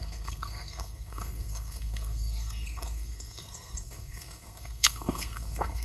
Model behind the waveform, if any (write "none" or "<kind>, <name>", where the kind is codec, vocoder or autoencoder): codec, SNAC